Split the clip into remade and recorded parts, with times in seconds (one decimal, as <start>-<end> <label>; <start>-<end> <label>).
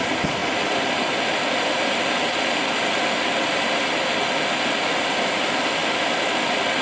0.0-6.8 recorded